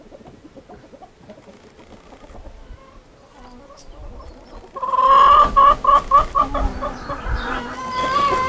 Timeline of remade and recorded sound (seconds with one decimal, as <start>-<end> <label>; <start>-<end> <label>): 0.0-8.5 recorded